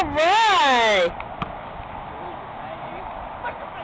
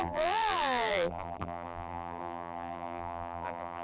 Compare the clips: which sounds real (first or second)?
first